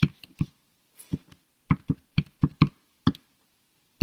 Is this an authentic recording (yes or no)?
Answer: yes